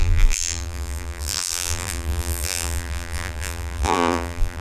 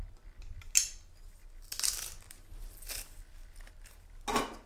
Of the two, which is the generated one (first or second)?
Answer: first